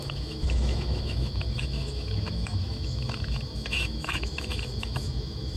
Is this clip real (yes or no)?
no